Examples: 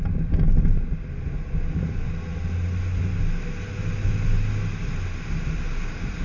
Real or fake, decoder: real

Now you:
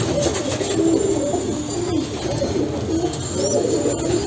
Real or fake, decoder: real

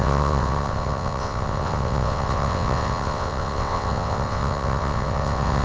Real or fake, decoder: fake, vocoder, WaveNeXt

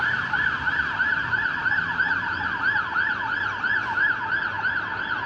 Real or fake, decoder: real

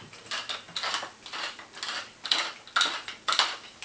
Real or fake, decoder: real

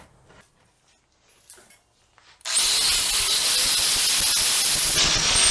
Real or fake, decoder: real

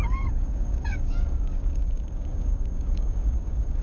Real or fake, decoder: fake, codec, DAC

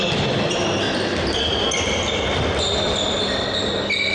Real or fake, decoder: real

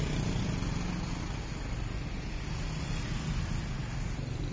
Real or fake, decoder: real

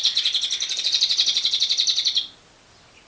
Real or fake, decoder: fake, vocoder, BigVGAN v2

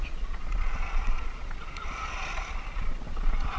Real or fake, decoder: fake, vocoder, Vocos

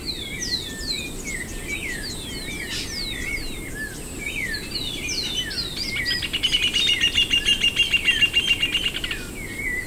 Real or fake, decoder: real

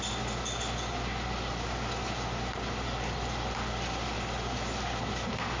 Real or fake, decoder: real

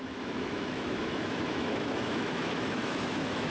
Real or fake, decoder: fake, autoencoder, DAC-VAE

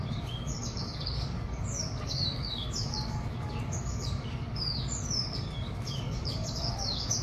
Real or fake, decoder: fake, codec, DAC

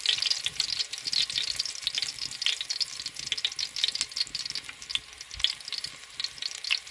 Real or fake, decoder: real